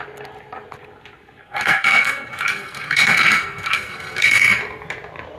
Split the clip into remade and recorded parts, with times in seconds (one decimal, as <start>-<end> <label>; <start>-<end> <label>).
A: 0.0-1.4 recorded; 1.4-4.6 remade; 4.6-5.4 recorded